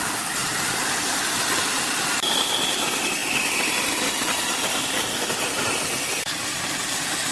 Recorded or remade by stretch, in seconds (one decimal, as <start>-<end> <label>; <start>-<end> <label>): 0.0-7.3 recorded